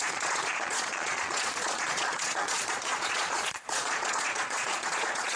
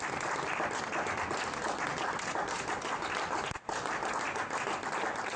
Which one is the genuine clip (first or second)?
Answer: second